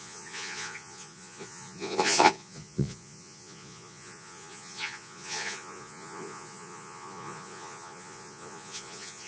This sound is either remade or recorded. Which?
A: remade